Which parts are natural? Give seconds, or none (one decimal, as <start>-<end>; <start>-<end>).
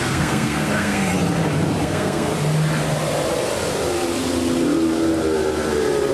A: 1.1-1.8; 2.3-6.1